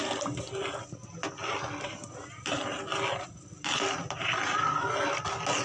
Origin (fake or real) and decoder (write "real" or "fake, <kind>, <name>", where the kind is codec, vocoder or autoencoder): real